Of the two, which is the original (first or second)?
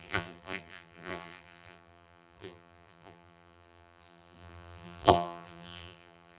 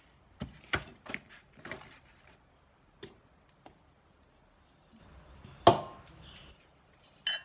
second